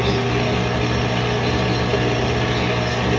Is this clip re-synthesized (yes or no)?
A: no